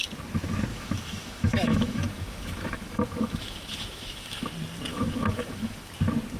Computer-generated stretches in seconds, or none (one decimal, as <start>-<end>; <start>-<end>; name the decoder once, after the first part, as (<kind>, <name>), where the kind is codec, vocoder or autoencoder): 0.7-4.5 (autoencoder, DAC-VAE); 4.9-5.9